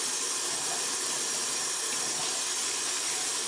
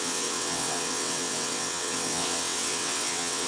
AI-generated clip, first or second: second